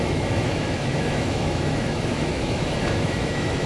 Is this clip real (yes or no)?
no